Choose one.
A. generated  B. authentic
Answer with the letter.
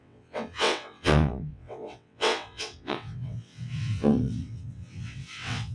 A